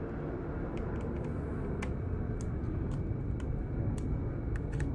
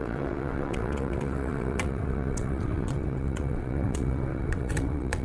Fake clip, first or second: second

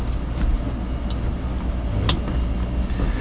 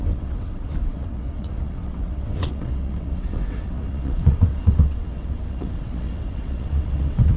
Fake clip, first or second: second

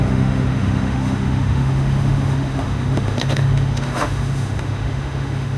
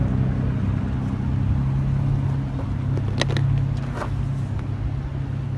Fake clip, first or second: first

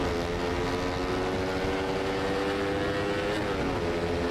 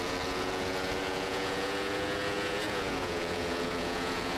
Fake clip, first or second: second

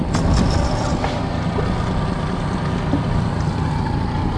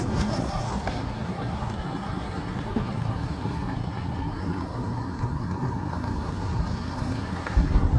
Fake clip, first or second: second